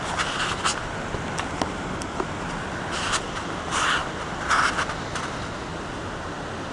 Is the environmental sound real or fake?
real